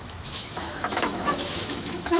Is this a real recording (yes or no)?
no